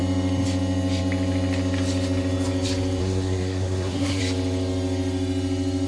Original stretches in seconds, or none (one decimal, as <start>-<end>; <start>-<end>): 0.0-3.0; 4.2-5.9